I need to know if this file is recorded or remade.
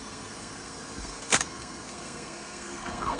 remade